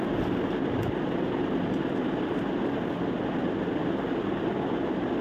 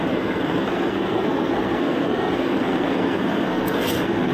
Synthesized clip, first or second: second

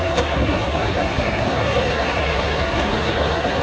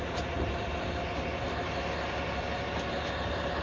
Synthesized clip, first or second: first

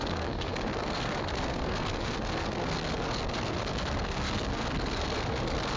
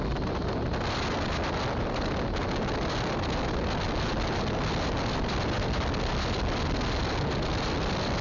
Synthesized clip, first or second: first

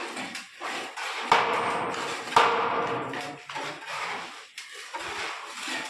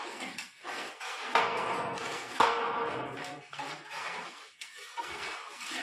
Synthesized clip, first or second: second